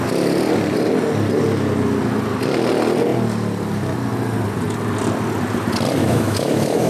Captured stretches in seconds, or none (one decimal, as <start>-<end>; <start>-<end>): 0.0-6.0